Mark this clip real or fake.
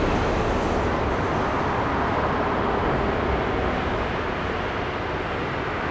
real